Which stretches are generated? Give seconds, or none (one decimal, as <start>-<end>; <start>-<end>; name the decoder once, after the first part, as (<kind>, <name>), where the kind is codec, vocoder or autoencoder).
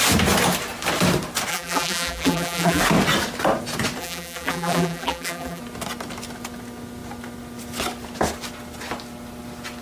1.5-2.8 (vocoder, BigVGAN v2); 4.0-5.6